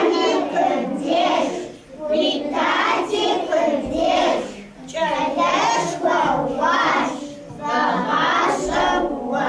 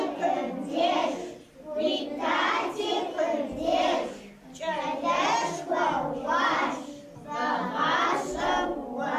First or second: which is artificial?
first